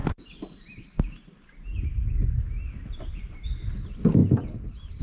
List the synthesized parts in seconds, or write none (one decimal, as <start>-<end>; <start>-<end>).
none